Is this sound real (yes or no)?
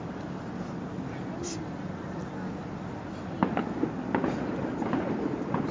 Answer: yes